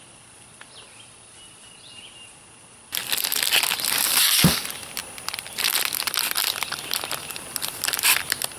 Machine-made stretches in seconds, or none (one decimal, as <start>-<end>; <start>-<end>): none